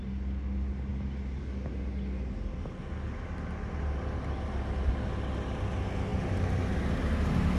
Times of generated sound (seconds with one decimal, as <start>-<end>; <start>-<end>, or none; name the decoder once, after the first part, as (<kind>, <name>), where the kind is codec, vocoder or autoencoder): none